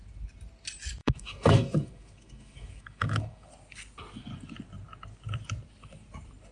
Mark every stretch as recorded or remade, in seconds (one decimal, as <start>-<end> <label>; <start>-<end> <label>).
0.0-1.0 recorded; 1.0-3.5 remade; 3.5-6.5 recorded